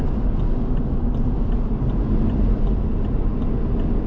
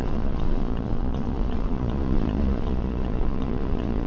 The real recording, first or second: first